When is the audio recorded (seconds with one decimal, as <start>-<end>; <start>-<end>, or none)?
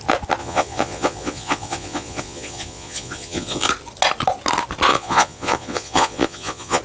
0.0-0.4; 3.7-4.9